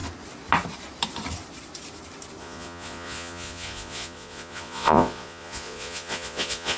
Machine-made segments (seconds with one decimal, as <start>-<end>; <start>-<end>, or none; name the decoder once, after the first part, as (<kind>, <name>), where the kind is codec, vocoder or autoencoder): 2.4-6.8 (vocoder, Vocos)